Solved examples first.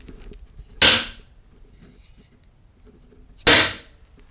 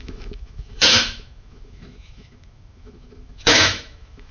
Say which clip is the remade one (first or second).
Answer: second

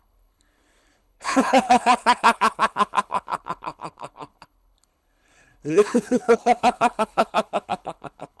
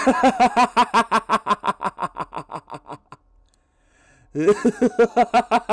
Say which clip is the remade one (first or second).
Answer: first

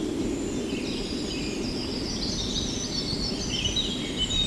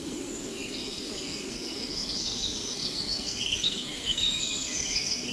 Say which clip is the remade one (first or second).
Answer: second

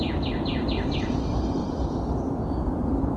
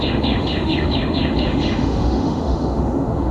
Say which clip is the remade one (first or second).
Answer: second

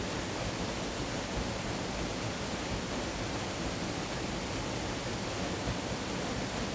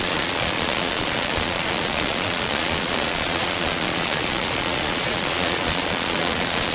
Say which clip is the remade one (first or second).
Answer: second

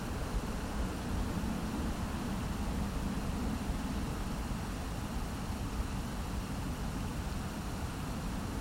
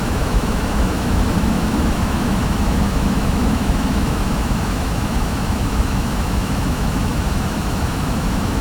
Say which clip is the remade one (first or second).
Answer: second